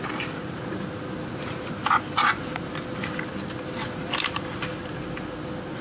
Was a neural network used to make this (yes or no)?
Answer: no